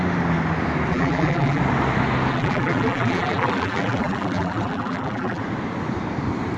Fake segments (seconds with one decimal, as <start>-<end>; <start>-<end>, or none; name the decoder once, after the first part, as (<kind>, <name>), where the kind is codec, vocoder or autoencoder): 0.9-1.6 (vocoder, BigVGAN v2); 2.3-5.4

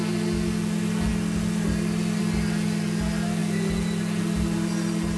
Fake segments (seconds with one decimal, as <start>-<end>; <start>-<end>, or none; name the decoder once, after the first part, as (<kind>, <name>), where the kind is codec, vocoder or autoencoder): 1.1-2.2 (vocoder, BigVGAN v2); 3.4-4.2

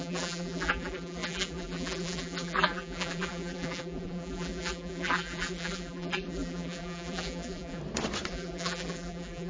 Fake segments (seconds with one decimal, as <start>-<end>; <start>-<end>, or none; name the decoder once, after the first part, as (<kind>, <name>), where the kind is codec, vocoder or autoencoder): 0.0-7.8 (vocoder, BigVGAN v2); 8.3-9.5

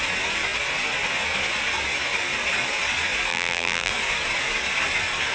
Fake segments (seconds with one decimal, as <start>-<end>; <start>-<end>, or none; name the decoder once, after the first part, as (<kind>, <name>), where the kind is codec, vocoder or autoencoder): 3.3-3.9 (vocoder, BigVGAN v2)

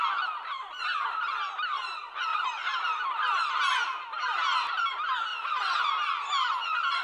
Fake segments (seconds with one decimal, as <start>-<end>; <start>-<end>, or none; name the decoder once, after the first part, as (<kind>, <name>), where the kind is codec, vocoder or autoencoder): 2.3-3.5 (vocoder, BigVGAN v2); 5.3-5.9

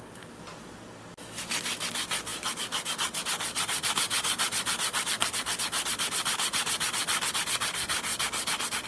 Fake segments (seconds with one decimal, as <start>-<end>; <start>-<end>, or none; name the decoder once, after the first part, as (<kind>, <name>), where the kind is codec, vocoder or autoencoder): 2.3-7.3 (vocoder, BigVGAN v2)

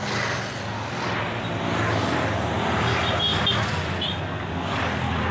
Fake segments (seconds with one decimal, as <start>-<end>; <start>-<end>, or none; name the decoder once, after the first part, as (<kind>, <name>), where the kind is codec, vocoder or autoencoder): 3.3-4.8 (vocoder, BigVGAN v2)